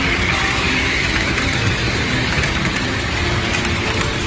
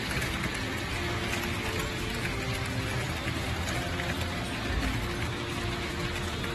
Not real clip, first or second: first